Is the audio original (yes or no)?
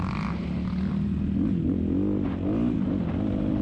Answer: yes